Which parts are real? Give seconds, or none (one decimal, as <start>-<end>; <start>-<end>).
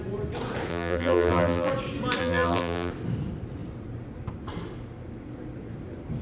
0.0-0.7; 1.7-2.2; 2.9-6.2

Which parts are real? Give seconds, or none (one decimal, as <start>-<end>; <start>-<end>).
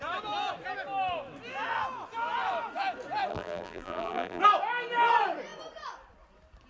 0.0-3.3; 4.4-6.7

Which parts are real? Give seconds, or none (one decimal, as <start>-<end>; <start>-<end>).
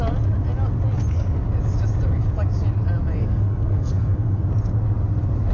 0.0-3.2; 4.5-5.5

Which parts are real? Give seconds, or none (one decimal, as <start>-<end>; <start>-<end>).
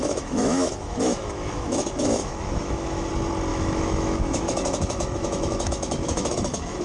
3.1-3.5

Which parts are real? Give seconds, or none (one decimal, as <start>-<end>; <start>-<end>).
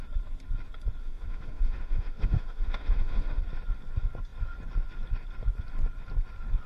0.0-1.0; 3.4-6.7